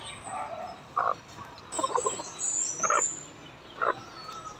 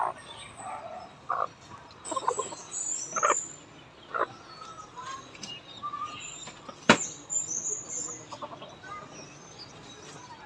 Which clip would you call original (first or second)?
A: first